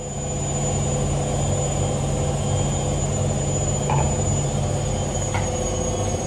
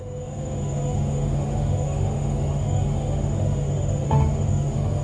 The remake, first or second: second